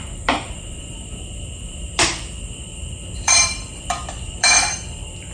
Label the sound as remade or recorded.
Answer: remade